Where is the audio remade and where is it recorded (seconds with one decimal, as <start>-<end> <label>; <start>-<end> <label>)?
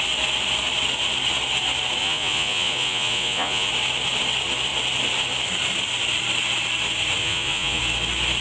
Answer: 0.0-2.0 recorded; 2.0-3.7 remade; 3.7-7.2 recorded; 7.2-7.8 remade; 7.8-8.4 recorded